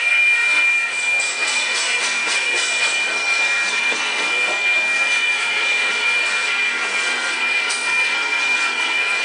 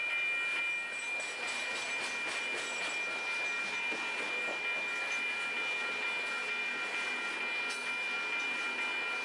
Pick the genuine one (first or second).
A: second